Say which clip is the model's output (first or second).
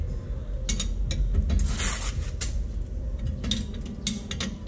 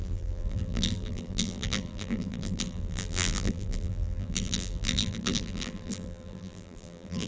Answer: second